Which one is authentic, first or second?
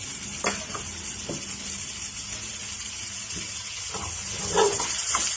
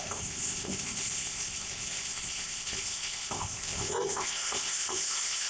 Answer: first